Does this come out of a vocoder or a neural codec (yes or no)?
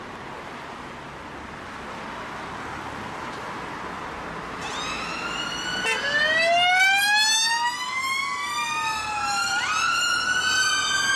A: no